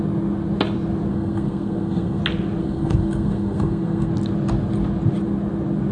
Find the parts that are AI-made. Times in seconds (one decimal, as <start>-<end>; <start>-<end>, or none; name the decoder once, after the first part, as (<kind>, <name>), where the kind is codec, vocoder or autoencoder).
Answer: 1.1-2.2 (codec, SNAC); 2.6-4.1